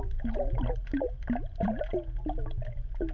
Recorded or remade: recorded